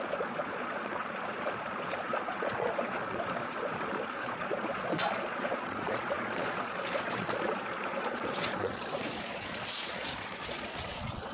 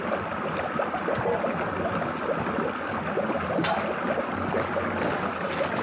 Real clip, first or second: second